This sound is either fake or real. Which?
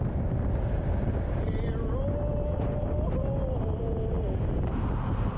real